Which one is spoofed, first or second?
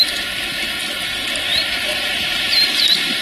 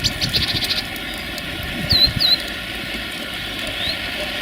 first